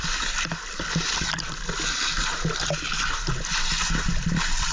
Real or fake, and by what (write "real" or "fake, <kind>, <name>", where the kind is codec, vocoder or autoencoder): real